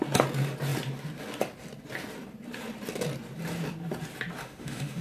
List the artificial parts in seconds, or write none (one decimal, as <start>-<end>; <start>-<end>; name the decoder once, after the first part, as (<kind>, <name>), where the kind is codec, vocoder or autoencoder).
4.4-5.0 (autoencoder, DAC-VAE)